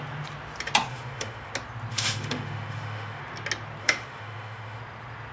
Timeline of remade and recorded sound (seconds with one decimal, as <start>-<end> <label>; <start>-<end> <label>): 0.0-0.9 recorded; 0.9-1.5 remade; 1.5-1.9 recorded; 1.9-3.2 remade; 3.2-3.8 recorded; 3.8-4.8 remade; 4.8-5.3 recorded